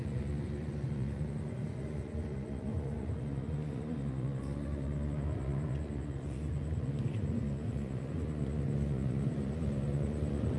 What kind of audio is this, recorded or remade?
remade